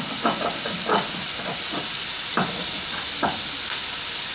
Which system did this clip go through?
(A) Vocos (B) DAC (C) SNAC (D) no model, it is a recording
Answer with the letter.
D